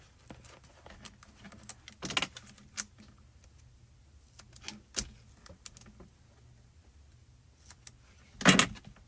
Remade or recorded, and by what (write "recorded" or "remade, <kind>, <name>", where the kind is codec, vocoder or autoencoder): recorded